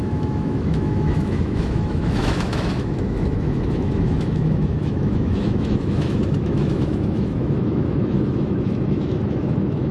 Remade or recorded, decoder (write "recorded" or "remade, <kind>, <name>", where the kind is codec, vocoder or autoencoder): remade, autoencoder, DAC-VAE